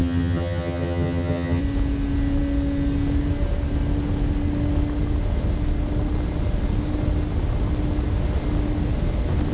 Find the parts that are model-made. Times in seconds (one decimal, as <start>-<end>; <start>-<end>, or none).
0.0-1.6